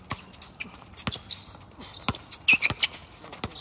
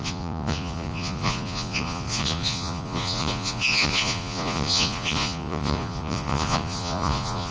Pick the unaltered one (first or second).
first